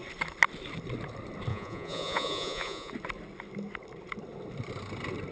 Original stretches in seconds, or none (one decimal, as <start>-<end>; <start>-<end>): 0.0-1.5; 2.9-5.3